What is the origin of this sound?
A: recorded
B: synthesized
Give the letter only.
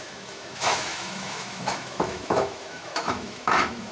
B